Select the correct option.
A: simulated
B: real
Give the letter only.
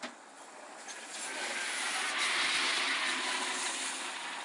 B